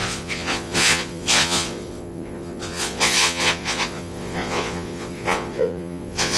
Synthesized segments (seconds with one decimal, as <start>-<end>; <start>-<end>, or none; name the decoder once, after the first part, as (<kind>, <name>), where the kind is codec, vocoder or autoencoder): 0.0-6.4 (vocoder, Vocos)